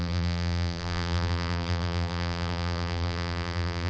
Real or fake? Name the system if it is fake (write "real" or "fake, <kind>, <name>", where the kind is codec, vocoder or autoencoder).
fake, vocoder, BigVGAN v2